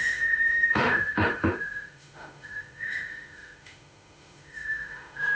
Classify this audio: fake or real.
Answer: fake